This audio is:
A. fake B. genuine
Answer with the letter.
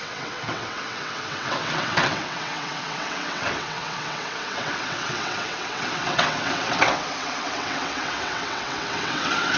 A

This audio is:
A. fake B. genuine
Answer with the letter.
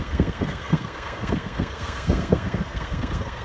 A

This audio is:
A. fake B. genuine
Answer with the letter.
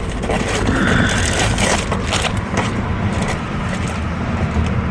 B